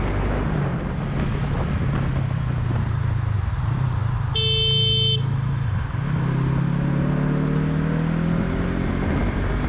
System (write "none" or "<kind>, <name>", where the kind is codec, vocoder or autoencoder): none